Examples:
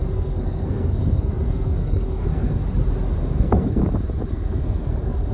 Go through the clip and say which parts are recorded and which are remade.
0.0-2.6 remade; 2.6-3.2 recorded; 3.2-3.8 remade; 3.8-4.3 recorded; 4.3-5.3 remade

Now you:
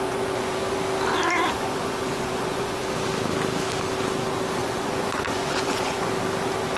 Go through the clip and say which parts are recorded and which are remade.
0.0-0.6 remade; 0.6-1.5 recorded; 1.5-2.8 remade; 2.8-4.6 recorded; 4.6-6.1 remade; 6.1-6.8 recorded

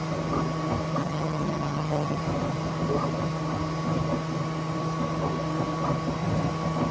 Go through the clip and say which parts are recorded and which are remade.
0.0-1.0 recorded; 1.0-2.2 remade; 2.2-6.9 recorded